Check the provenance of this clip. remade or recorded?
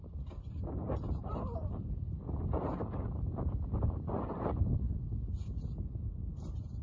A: recorded